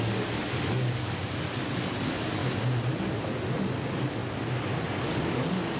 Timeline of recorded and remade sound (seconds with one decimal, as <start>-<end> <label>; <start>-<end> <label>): 0.0-2.4 remade; 2.4-3.6 recorded; 3.6-4.2 remade; 4.2-5.1 recorded; 5.1-5.8 remade